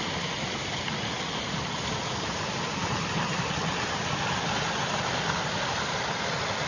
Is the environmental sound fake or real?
real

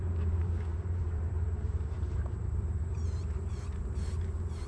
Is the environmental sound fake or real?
fake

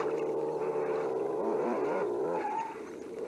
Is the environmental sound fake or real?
fake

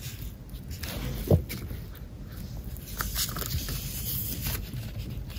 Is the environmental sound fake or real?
real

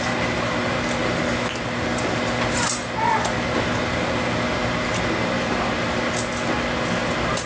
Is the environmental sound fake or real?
real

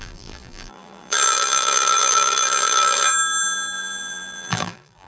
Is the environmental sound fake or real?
fake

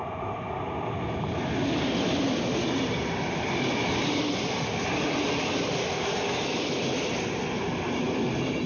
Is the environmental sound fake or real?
real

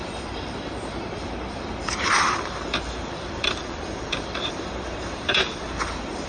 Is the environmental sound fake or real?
fake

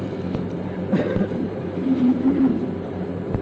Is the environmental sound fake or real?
fake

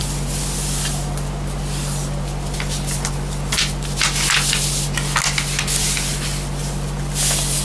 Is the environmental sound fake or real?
real